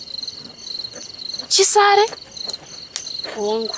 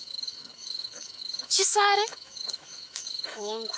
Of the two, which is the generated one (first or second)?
second